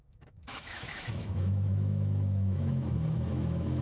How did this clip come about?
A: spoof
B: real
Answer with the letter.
A